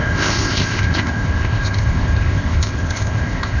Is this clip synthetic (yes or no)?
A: yes